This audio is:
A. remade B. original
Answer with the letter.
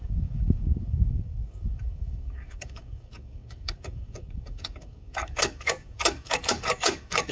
A